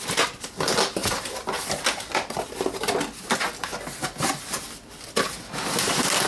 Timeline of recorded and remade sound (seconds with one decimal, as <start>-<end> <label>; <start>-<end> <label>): 0.0-6.3 recorded